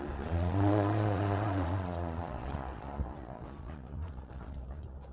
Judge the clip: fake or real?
fake